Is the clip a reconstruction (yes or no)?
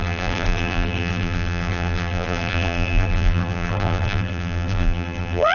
yes